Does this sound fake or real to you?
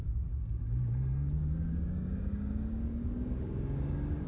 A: fake